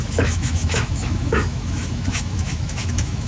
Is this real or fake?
fake